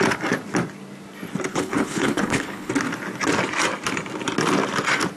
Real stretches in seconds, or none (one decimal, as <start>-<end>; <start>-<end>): 0.0-1.5; 2.7-5.2